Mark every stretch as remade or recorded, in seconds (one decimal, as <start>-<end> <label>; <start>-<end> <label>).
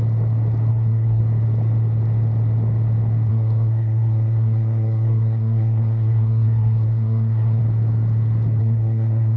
0.0-0.7 recorded; 0.7-1.2 remade; 1.2-3.3 recorded; 3.3-7.6 remade; 7.6-8.6 recorded; 8.6-9.4 remade